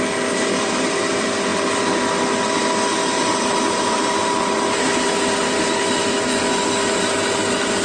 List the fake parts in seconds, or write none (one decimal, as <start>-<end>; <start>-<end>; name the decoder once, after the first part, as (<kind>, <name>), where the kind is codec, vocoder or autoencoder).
none